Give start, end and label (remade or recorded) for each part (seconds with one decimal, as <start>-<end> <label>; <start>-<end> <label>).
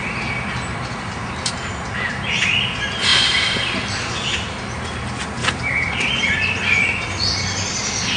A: 0.0-1.2 recorded; 1.2-1.7 remade; 1.7-3.1 recorded; 3.1-4.1 remade; 4.1-5.4 recorded; 5.4-5.9 remade; 5.9-8.2 recorded